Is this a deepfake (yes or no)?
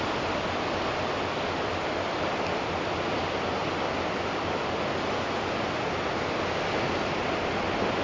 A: no